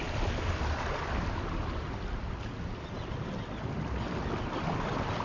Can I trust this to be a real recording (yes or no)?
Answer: yes